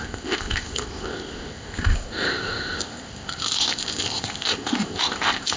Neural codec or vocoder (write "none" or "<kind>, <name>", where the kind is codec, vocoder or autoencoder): codec, ZipCodec